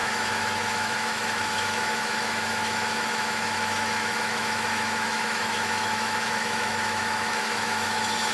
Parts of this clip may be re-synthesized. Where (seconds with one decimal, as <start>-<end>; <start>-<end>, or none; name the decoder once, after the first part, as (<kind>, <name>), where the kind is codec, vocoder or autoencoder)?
0.0-8.3 (autoencoder, DAC-VAE)